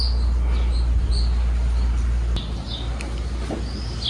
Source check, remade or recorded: recorded